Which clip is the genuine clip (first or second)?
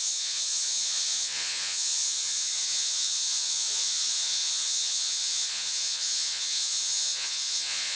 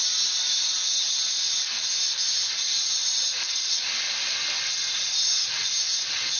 second